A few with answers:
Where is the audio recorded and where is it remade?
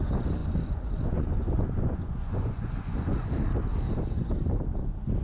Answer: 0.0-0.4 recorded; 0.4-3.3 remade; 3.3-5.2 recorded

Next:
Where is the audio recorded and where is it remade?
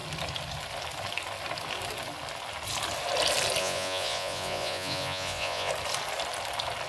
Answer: 0.0-3.6 recorded; 3.6-5.7 remade; 5.7-6.9 recorded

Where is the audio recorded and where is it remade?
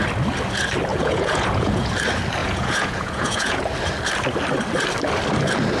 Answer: 0.0-0.9 recorded; 0.9-1.9 remade; 1.9-2.4 recorded; 2.4-3.6 remade; 3.6-5.8 recorded